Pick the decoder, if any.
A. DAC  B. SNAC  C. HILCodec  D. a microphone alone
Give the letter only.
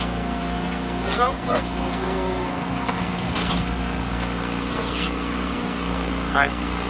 B